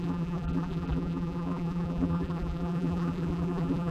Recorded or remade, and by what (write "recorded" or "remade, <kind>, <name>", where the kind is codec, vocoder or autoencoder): remade, vocoder, BigVGAN v2